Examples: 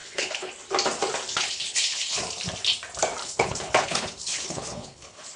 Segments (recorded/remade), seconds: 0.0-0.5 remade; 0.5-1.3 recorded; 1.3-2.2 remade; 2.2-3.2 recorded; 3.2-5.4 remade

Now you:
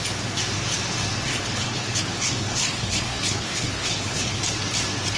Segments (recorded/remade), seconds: 0.0-1.3 recorded; 1.3-4.4 remade; 4.4-5.2 recorded

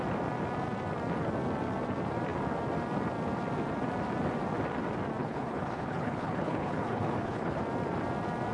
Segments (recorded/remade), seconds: 0.0-5.2 recorded; 5.2-7.6 remade; 7.6-8.5 recorded

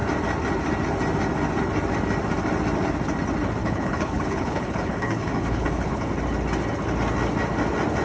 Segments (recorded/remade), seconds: 0.0-3.6 recorded; 3.6-6.1 remade; 6.1-8.0 recorded

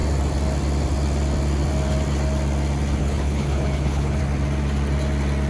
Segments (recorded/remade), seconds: 0.0-3.0 recorded; 3.0-4.2 remade; 4.2-5.5 recorded

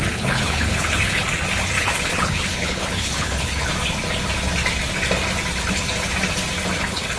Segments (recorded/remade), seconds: 0.0-1.2 remade; 1.2-1.8 recorded; 1.8-3.7 remade; 3.7-6.8 recorded; 6.8-7.2 remade